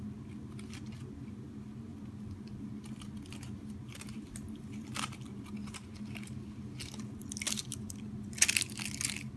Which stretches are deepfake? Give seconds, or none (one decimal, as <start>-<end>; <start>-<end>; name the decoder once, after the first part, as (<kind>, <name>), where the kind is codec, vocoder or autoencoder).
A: none